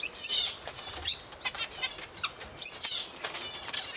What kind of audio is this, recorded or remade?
recorded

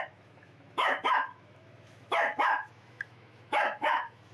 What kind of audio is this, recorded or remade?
remade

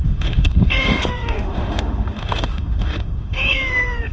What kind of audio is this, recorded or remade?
remade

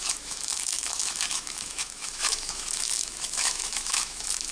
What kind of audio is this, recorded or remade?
remade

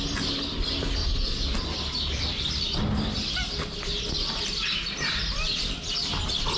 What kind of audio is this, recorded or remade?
recorded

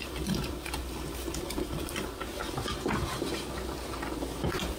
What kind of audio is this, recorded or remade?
recorded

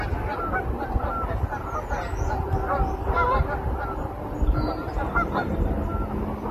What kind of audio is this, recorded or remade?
recorded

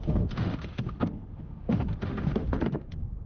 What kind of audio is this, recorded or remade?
remade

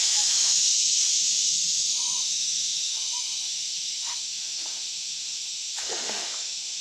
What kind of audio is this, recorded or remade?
remade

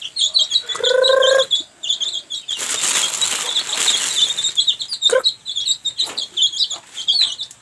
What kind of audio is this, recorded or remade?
recorded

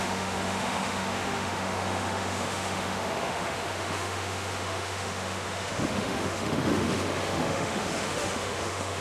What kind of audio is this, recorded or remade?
remade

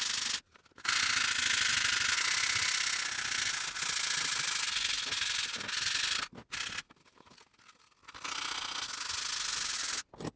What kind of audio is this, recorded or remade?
recorded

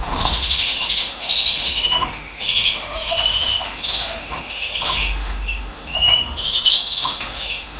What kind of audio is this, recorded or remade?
remade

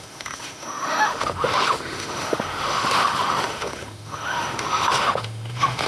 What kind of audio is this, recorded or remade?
remade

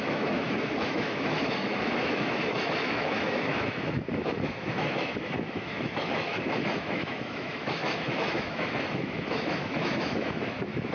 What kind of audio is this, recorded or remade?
remade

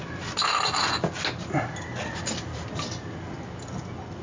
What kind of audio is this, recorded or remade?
recorded